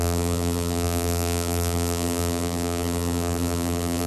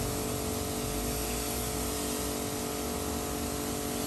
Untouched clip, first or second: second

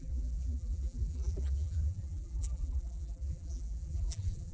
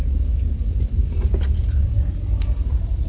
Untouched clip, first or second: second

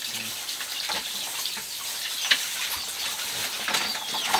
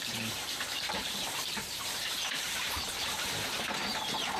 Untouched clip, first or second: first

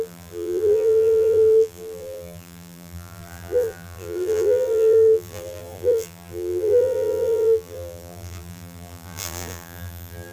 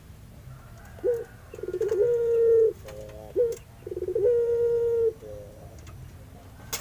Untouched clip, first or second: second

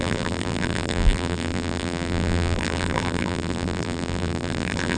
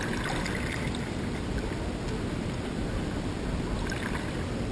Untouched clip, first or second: second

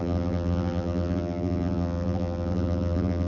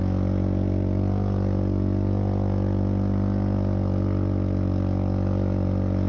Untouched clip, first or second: second